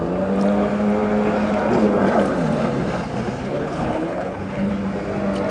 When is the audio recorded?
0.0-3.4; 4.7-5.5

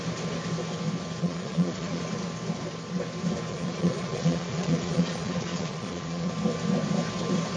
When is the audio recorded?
0.0-1.2; 2.0-3.5; 6.3-7.6

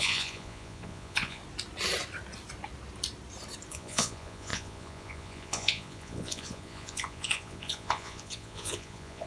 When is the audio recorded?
1.4-3.7

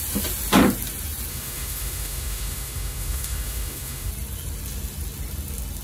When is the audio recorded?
0.0-1.3; 4.1-5.8

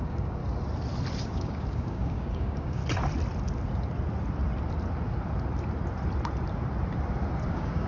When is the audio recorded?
0.4-1.2; 2.8-7.5